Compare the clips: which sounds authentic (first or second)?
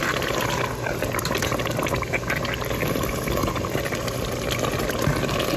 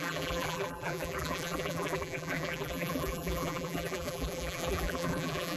first